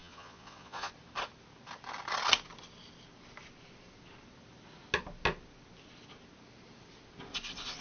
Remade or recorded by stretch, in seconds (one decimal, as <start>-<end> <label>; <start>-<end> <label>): 0.0-0.9 remade; 0.9-7.8 recorded